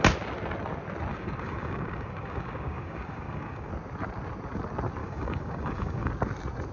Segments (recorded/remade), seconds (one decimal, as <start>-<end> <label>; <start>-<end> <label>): 0.0-1.1 recorded; 1.1-3.7 remade; 3.7-5.0 recorded; 5.0-6.1 remade; 6.1-6.7 recorded